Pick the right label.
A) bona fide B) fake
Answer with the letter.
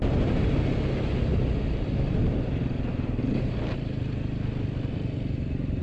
A